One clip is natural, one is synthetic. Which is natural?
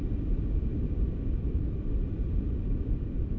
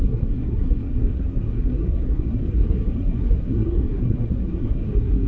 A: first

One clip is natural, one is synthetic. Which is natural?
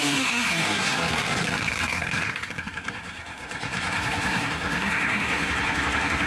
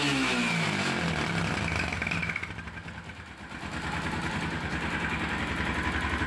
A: second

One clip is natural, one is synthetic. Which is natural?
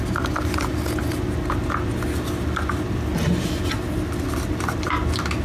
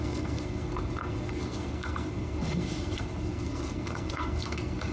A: first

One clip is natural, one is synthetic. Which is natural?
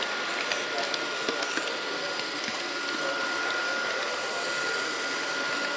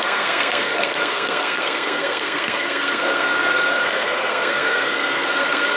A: first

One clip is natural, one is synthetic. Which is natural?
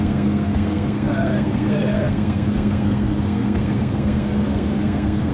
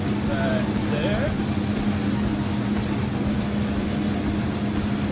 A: second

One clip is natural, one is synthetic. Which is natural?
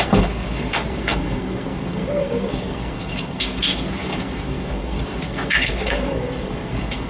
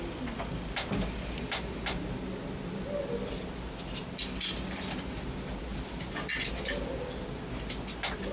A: second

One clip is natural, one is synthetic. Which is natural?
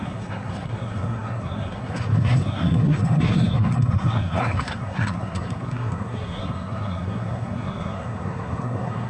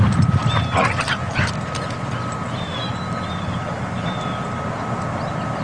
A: second